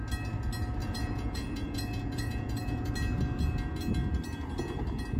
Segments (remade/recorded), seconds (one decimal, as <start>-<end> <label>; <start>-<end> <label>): 0.0-0.8 recorded; 0.8-2.9 remade; 2.9-5.2 recorded